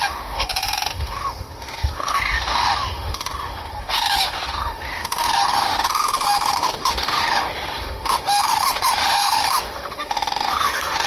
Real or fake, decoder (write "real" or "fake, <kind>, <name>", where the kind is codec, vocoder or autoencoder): fake, autoencoder, DAC-VAE